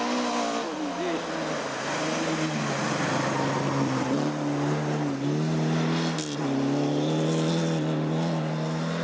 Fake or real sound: real